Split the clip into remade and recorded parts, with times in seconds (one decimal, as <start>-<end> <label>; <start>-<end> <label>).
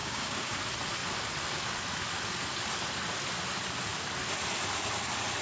0.0-0.6 remade; 0.6-5.4 recorded